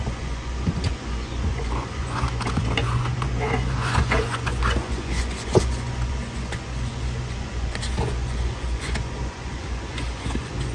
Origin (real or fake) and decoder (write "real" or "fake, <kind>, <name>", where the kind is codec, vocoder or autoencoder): fake, vocoder, Vocos